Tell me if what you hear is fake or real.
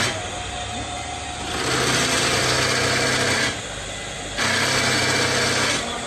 real